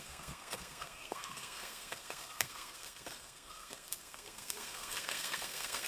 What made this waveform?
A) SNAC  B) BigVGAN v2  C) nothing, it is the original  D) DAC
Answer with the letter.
A